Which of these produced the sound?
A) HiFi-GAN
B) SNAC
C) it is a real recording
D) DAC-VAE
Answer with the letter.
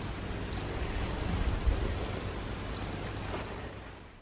C